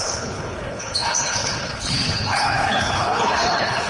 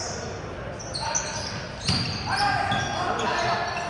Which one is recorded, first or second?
second